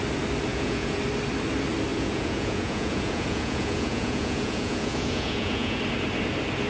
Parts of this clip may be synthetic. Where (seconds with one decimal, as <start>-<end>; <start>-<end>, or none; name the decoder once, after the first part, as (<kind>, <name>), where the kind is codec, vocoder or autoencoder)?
0.5-1.0 (vocoder, Vocos); 1.9-5.8